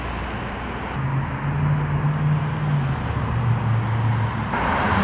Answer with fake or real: real